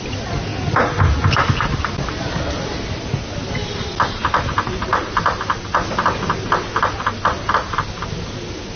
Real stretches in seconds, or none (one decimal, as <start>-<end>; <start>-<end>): 0.0-8.8